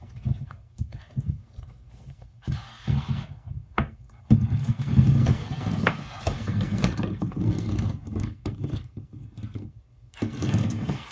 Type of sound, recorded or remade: remade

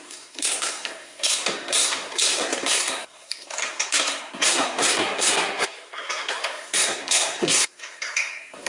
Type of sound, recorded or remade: remade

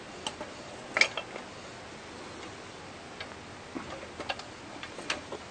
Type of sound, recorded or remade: recorded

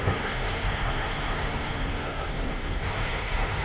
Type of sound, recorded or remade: remade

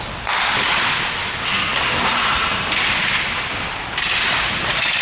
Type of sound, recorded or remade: recorded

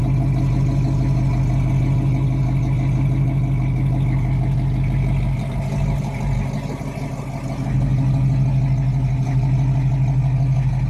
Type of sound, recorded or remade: recorded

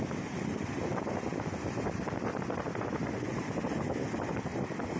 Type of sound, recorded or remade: recorded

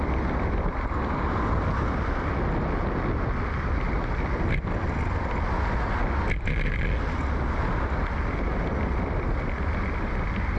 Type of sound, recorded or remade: recorded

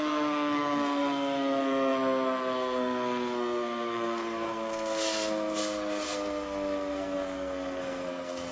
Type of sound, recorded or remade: remade